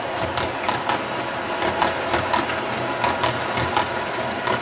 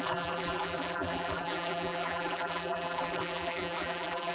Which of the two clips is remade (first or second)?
second